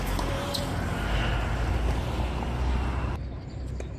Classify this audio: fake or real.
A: real